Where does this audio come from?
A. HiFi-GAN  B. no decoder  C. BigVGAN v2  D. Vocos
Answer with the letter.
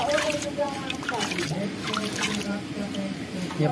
C